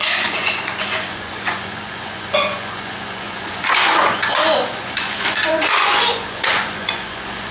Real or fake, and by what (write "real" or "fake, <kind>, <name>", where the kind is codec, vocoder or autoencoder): fake, vocoder, Vocos